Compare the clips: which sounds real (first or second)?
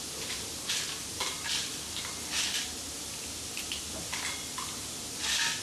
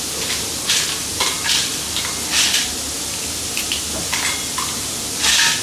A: second